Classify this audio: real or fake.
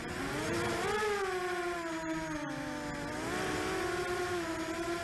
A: real